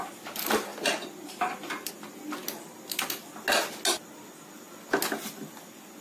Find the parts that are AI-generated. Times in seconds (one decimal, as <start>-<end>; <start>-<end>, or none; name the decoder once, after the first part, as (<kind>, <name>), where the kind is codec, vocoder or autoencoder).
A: 0.7-1.9 (vocoder, BigVGAN v2)

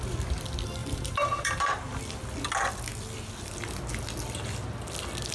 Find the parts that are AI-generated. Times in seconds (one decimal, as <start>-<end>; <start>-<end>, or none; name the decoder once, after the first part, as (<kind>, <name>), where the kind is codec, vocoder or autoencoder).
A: 0.8-2.0 (vocoder, BigVGAN v2)

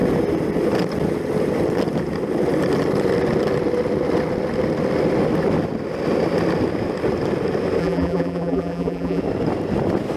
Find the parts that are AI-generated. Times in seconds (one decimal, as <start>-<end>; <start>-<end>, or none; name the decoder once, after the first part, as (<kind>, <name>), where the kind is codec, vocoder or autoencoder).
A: 7.8-9.2 (vocoder, BigVGAN v2)